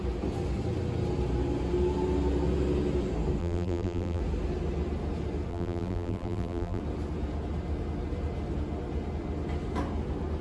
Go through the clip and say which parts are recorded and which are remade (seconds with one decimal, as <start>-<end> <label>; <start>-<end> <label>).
0.0-3.4 recorded; 3.4-4.2 remade; 4.2-5.5 recorded; 5.5-6.8 remade; 6.8-10.4 recorded